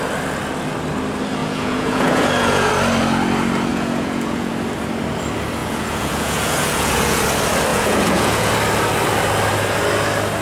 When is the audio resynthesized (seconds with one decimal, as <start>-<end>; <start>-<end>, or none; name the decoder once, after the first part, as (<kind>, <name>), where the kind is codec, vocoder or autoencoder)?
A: 1.4-2.7 (vocoder, Vocos); 3.7-4.5; 5.6-7.2; 7.7-8.5